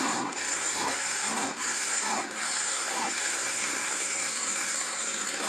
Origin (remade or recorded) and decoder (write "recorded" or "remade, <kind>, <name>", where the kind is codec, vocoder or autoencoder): remade, codec, SNAC